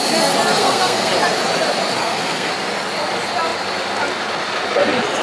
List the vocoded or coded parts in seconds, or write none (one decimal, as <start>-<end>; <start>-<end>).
0.6-1.1; 2.0-2.5